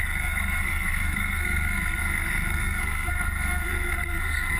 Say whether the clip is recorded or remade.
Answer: remade